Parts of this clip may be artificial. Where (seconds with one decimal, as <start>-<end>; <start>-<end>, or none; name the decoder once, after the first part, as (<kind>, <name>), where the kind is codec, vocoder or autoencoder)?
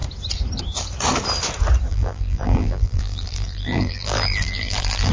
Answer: 1.9-5.1 (vocoder, BigVGAN v2)